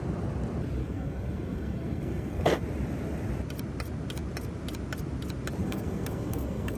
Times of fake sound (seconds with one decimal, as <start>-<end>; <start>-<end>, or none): 0.8-2.6; 5.6-6.8